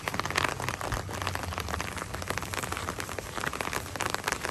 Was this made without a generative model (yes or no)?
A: yes